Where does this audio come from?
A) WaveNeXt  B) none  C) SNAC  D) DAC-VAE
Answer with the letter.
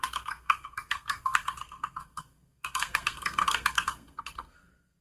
C